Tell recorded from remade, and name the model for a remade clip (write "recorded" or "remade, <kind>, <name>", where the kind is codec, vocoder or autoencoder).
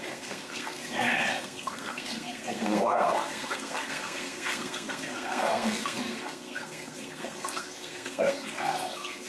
remade, codec, SNAC